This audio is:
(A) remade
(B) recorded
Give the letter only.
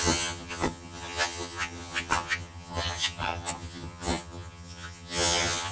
A